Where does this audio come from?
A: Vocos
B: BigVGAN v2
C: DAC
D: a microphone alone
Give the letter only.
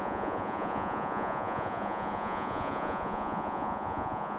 A